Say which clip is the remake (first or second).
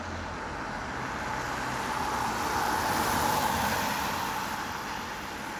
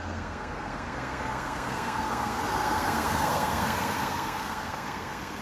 second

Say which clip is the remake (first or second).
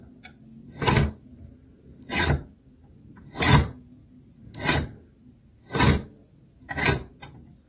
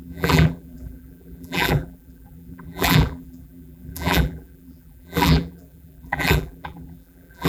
second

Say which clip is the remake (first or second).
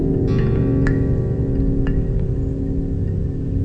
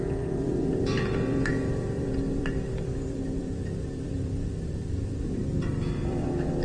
second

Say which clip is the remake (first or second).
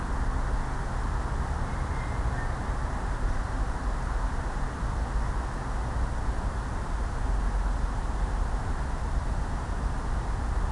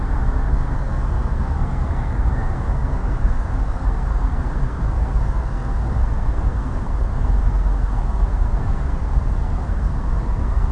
second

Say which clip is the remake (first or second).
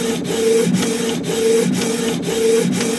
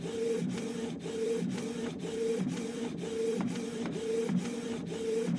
second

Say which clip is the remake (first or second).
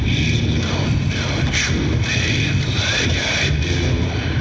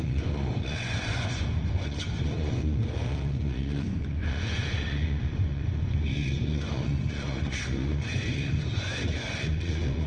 second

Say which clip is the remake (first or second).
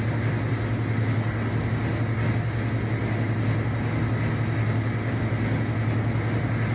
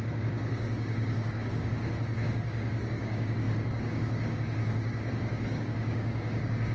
second